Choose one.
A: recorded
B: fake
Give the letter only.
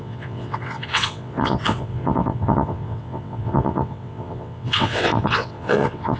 B